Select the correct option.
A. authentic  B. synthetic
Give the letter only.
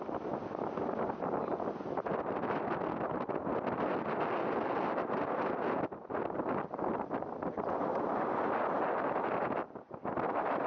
A